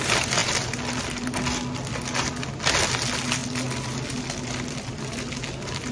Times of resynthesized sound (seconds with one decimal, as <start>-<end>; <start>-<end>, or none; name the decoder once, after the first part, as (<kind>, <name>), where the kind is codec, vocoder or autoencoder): none